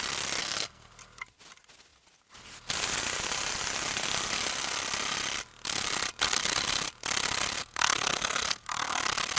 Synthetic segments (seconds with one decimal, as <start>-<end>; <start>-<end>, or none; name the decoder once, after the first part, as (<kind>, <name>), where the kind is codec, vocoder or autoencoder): 0.4-0.9 (codec, SNAC); 7.6-9.0